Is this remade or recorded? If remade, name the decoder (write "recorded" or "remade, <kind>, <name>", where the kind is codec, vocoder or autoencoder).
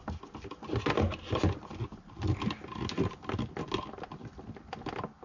recorded